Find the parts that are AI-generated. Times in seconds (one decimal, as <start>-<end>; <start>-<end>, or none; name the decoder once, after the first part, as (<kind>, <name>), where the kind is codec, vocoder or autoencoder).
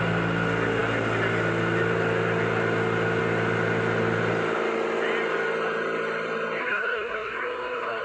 6.6-8.0 (codec, SNAC)